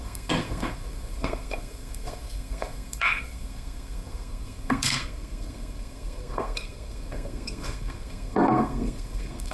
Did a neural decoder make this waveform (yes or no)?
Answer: yes